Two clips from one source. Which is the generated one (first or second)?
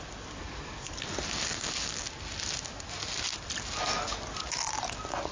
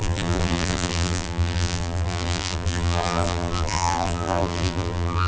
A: second